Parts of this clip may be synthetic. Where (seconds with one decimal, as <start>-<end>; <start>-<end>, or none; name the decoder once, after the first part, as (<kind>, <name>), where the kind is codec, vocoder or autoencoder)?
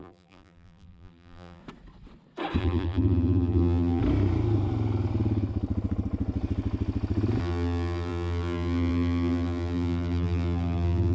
0.0-1.6 (vocoder, BigVGAN v2); 2.6-4.0; 7.4-11.1